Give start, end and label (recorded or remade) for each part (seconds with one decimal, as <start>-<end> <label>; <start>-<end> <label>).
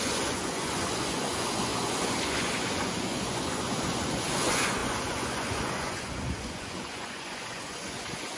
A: 0.0-8.4 remade